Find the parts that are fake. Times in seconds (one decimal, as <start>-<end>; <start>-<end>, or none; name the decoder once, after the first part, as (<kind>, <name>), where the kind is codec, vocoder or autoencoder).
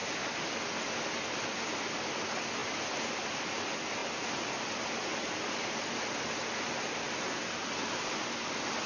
none